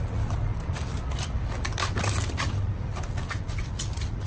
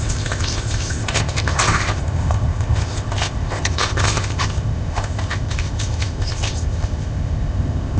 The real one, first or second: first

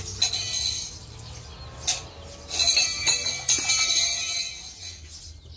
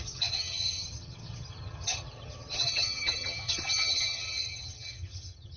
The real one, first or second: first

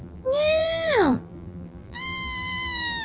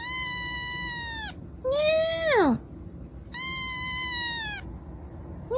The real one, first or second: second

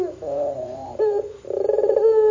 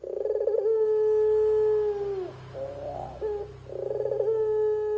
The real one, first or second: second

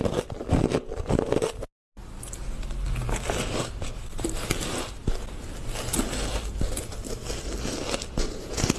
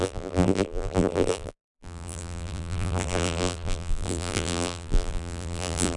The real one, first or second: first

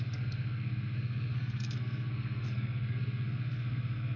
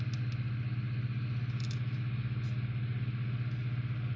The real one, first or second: second